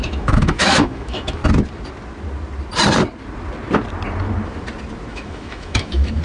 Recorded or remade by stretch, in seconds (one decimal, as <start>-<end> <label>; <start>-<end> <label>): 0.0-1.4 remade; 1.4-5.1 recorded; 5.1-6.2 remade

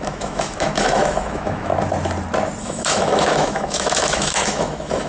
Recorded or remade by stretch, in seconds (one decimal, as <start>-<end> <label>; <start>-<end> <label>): 0.0-1.7 remade; 1.7-2.6 recorded; 2.6-5.1 remade

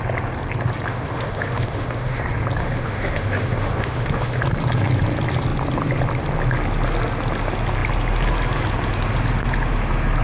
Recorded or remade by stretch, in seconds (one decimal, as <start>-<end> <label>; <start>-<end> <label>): 0.0-0.9 recorded; 0.9-2.2 remade; 2.2-2.6 recorded; 2.6-4.4 remade; 4.4-10.2 recorded

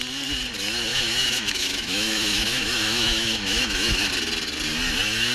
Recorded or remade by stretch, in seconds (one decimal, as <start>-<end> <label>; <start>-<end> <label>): 0.0-0.9 recorded; 0.9-4.1 remade; 4.1-5.3 recorded

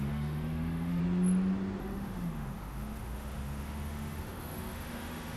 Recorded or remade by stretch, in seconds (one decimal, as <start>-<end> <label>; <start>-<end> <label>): 0.0-1.0 remade; 1.0-1.8 recorded; 1.8-5.4 remade

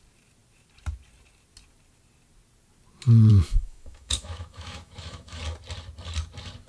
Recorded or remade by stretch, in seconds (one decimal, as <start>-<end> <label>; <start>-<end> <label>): 0.0-3.3 recorded; 3.3-5.4 remade; 5.4-6.7 recorded